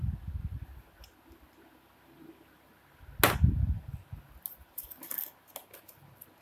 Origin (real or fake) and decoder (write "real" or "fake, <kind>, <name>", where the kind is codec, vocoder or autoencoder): real